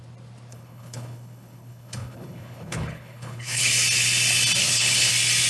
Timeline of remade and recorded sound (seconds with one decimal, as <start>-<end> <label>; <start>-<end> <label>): 0.0-0.5 recorded; 0.5-3.7 remade; 3.7-4.6 recorded; 4.6-5.1 remade; 5.1-5.5 recorded